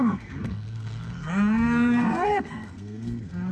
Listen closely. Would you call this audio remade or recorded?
remade